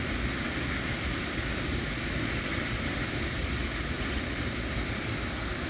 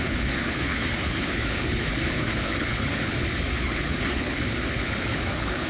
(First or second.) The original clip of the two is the first